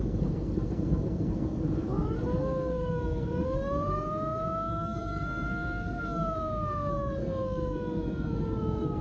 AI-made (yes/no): yes